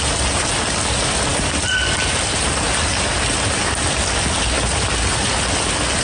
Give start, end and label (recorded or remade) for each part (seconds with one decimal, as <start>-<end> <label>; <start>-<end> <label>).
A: 0.0-6.0 recorded